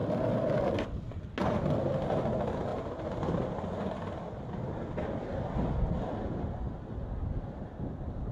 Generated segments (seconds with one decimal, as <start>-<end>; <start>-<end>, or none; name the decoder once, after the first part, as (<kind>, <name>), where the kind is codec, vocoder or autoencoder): none